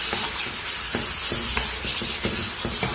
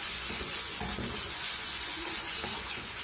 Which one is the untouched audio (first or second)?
first